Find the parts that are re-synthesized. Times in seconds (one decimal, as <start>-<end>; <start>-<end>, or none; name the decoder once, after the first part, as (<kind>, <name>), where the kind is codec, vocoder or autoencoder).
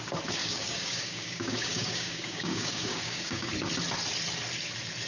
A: 0.4-3.5 (codec, DAC)